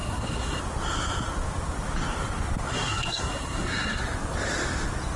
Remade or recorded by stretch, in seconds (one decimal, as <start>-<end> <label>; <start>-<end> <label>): 0.0-0.6 remade; 0.6-2.7 recorded; 2.7-4.0 remade; 4.0-5.2 recorded

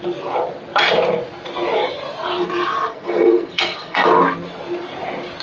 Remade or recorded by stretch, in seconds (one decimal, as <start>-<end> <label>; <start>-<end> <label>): 0.0-2.9 recorded; 2.9-4.2 remade; 4.2-5.4 recorded

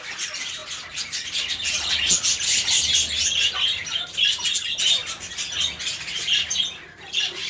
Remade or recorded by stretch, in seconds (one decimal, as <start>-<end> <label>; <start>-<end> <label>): 0.0-7.5 recorded

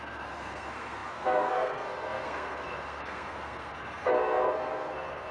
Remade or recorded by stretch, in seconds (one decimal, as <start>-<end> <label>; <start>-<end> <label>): 0.0-5.3 remade